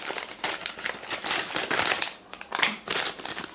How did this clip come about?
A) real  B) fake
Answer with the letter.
B